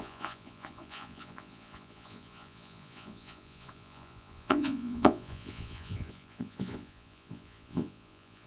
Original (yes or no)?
no